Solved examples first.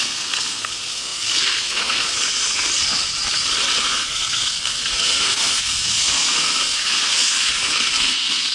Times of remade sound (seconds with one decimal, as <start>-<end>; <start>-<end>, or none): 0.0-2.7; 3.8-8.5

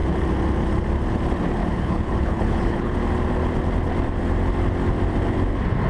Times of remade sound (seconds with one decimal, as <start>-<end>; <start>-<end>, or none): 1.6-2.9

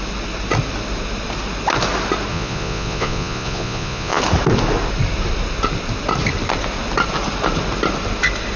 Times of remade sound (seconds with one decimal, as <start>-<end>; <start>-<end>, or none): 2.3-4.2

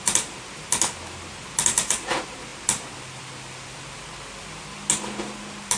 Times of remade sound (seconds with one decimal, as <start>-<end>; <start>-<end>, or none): none

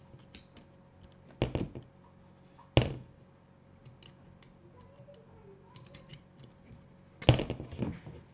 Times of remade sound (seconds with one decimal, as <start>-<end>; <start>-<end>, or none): none

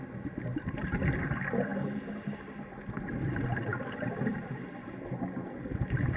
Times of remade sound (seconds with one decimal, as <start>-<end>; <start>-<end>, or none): 0.5-1.0; 3.7-4.9